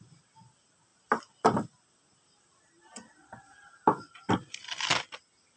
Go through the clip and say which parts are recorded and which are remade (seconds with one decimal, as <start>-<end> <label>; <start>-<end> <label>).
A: 0.0-5.6 recorded